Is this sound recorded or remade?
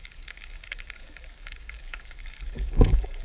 remade